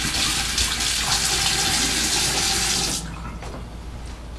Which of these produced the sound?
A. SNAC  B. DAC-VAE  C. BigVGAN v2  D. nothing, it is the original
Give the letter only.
D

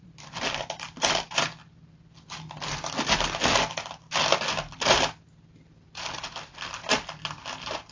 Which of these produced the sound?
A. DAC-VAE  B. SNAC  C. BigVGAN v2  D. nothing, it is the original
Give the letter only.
D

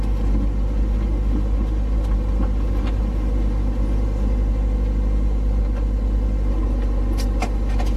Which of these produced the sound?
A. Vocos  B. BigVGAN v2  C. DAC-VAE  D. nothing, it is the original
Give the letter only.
D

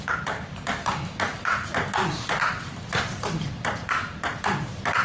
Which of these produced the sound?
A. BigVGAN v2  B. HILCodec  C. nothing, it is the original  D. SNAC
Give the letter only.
A